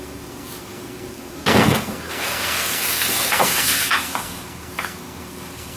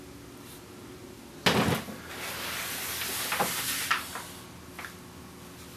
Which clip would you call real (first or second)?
second